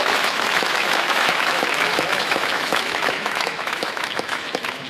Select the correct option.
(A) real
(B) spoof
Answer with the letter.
B